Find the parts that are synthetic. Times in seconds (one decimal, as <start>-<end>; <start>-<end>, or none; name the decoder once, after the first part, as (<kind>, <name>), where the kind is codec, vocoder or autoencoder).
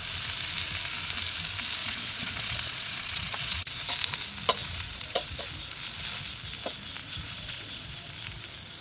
1.8-3.9 (vocoder, Vocos); 4.6-5.4; 7.0-8.1